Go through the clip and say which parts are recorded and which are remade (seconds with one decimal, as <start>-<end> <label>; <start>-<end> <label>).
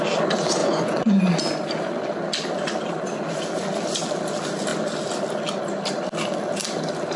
0.0-0.6 recorded; 0.6-1.3 remade; 1.3-7.2 recorded